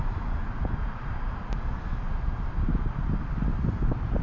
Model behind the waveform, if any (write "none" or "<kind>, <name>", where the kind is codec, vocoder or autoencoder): none